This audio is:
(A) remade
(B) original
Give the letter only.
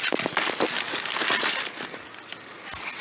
B